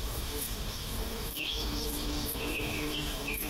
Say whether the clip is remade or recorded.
remade